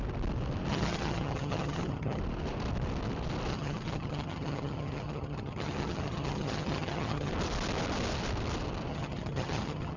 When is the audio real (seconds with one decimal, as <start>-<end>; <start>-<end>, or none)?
0.0-0.7; 2.2-3.5; 7.3-8.9